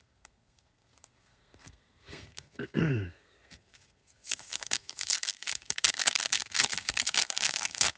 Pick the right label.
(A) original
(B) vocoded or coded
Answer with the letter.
B